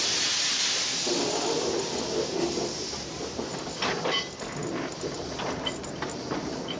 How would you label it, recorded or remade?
recorded